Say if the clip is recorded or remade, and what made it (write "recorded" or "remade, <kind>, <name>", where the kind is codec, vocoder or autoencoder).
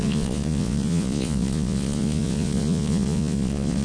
remade, vocoder, Vocos